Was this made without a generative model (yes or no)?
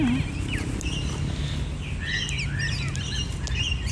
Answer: yes